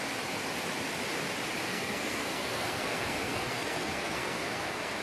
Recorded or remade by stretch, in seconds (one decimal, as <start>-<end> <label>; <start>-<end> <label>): 0.0-1.7 recorded; 1.7-5.0 remade